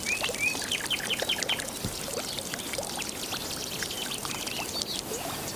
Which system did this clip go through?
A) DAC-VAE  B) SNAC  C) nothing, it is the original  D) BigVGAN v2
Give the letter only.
C